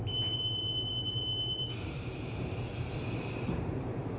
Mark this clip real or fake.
fake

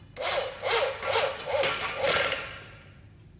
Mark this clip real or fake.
real